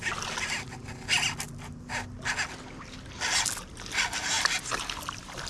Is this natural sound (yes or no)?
yes